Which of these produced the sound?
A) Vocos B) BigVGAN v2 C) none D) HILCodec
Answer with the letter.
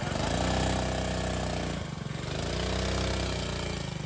C